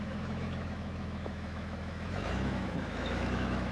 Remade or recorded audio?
remade